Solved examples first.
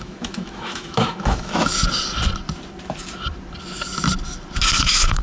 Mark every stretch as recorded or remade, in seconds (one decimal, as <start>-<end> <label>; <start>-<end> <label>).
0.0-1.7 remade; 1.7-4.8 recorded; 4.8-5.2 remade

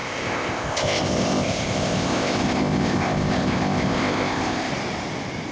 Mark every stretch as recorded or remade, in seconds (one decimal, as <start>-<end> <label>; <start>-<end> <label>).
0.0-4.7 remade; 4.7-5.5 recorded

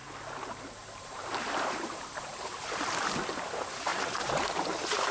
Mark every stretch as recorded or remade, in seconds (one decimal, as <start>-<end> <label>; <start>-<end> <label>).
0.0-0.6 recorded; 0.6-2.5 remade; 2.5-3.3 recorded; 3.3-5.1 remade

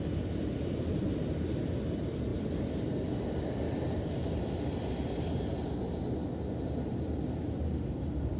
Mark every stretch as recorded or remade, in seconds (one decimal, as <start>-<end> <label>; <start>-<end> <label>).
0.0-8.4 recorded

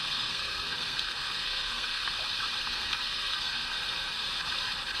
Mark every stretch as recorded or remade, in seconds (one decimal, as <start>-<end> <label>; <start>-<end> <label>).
0.0-2.0 remade; 2.0-2.6 recorded; 2.6-4.2 remade; 4.2-5.0 recorded

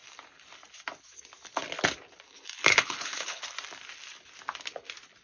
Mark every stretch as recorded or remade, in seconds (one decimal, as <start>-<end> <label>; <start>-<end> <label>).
0.0-2.7 recorded; 2.7-3.4 remade; 3.4-5.2 recorded

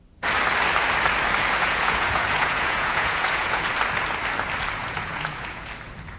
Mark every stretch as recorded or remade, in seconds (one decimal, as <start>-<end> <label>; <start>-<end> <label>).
0.0-1.6 recorded; 1.6-3.6 remade; 3.6-4.8 recorded; 4.8-5.7 remade; 5.7-6.2 recorded